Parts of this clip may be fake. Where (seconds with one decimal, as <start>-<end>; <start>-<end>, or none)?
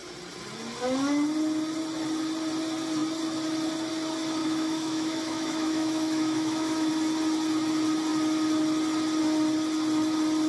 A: 4.4-6.9